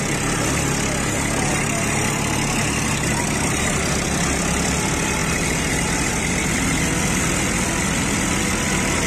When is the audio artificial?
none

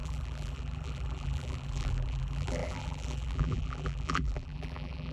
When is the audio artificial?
0.0-5.1 (vocoder, BigVGAN v2)

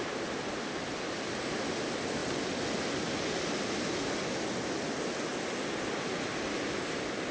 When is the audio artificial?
none

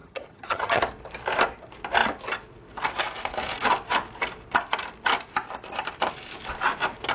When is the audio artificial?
0.0-0.8 (vocoder, HiFi-GAN)

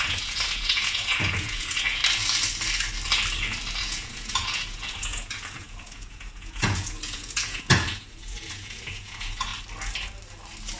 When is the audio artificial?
0.0-2.0 (vocoder, Vocos); 3.8-9.5

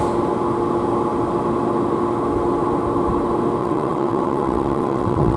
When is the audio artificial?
3.6-5.4 (vocoder, WaveNeXt)

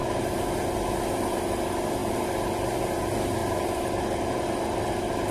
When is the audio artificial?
none

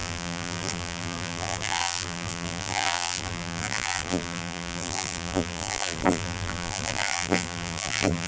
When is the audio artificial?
0.0-8.3 (vocoder, BigVGAN v2)